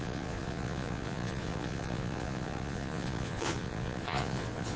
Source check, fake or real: fake